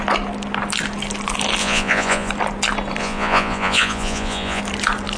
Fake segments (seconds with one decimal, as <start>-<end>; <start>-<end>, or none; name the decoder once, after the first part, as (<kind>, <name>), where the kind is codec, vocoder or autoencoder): 1.6-2.3 (vocoder, Vocos); 3.0-4.6